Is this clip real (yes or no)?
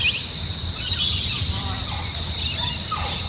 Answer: yes